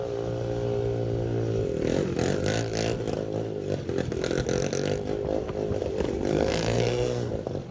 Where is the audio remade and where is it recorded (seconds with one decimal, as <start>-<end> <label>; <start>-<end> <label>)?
0.0-6.3 recorded; 6.3-7.3 remade; 7.3-7.7 recorded